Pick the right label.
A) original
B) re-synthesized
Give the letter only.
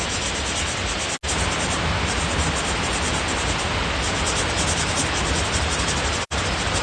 A